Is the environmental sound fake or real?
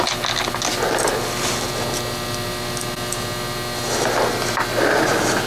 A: real